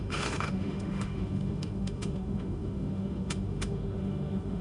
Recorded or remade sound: remade